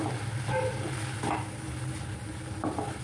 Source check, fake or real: real